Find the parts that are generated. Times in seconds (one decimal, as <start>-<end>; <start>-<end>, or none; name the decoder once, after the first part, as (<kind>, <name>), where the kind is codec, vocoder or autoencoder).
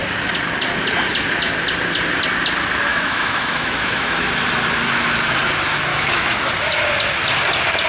2.9-4.2 (autoencoder, DAC-VAE); 5.9-6.5